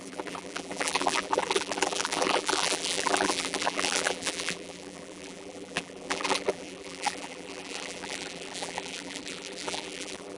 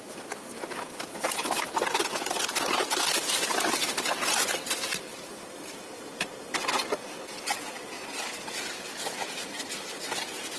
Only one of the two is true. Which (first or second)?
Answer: second